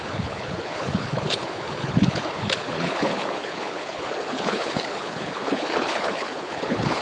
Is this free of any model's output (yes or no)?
no